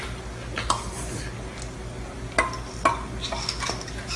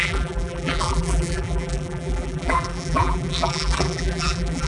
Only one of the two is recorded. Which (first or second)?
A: first